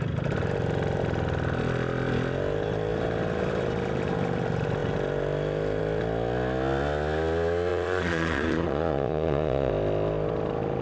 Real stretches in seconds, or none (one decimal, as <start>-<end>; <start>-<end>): 0.0-7.7; 9.7-10.8